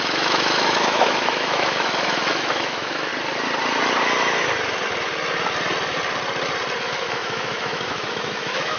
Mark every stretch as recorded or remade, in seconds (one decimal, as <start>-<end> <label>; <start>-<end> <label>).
0.0-3.1 remade; 3.1-6.8 recorded; 6.8-8.8 remade